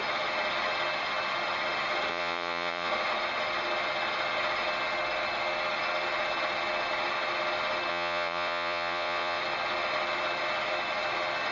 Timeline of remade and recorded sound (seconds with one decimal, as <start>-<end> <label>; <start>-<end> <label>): 0.0-2.1 recorded; 2.1-2.9 remade; 2.9-7.9 recorded; 7.9-9.4 remade; 9.4-11.5 recorded